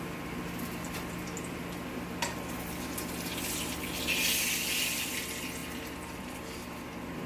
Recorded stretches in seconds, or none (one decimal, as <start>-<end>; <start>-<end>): 0.0-7.3